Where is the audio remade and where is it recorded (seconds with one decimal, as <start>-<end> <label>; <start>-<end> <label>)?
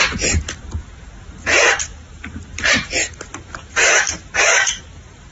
0.0-5.3 remade